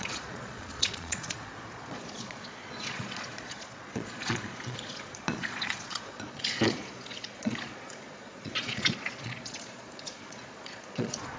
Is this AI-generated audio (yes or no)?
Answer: yes